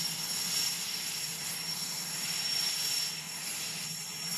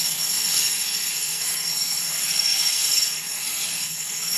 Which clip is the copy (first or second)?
second